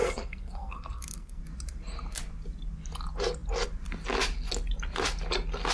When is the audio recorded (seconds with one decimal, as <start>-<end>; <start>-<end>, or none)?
1.4-5.7